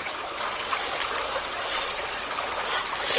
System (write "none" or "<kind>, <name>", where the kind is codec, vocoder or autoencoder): none